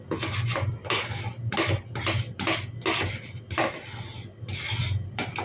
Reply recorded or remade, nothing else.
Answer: recorded